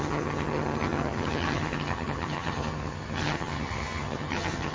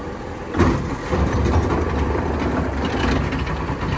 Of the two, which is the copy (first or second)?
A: first